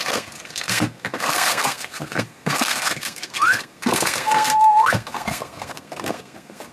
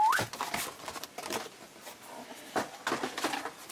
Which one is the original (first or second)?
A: second